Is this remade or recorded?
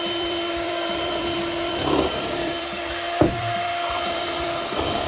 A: remade